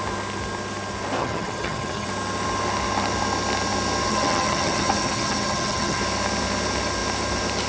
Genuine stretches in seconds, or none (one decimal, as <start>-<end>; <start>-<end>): 0.0-1.2; 2.1-4.1; 6.0-7.7